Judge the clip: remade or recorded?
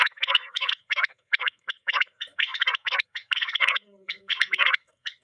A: remade